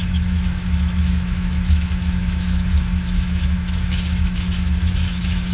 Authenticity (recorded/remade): remade